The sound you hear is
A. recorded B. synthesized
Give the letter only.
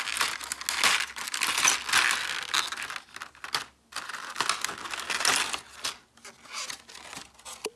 A